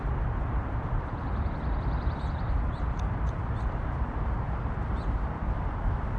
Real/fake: fake